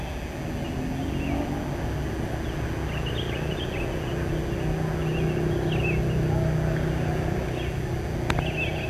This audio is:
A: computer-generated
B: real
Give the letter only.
B